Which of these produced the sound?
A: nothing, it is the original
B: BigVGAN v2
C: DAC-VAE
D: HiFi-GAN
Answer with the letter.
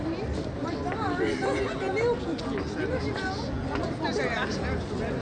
A